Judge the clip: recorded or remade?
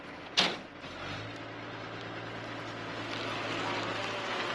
recorded